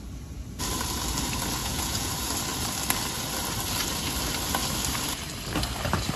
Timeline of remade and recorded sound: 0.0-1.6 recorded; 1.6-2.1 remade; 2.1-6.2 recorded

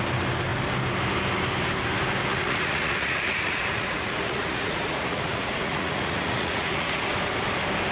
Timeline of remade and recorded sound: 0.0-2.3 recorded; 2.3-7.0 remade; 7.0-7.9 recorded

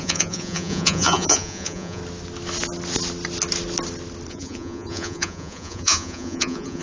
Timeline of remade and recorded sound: 0.0-2.0 remade; 2.0-4.3 recorded; 4.3-6.8 remade

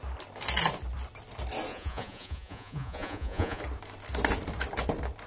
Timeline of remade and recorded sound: 0.0-1.7 recorded; 1.7-3.6 remade; 3.6-5.3 recorded

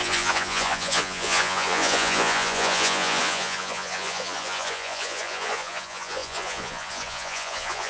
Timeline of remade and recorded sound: 0.0-7.9 remade

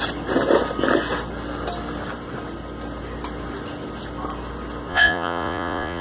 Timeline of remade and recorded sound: 0.0-4.9 recorded; 4.9-6.0 remade

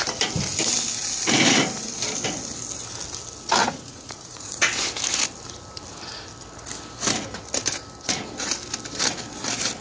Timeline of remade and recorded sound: 0.0-3.6 recorded; 3.6-4.7 remade; 4.7-9.8 recorded